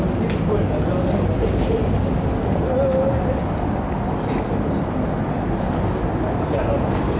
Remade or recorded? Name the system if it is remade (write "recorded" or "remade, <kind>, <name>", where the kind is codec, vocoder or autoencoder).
recorded